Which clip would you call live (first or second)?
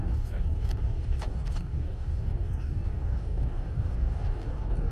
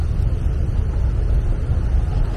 second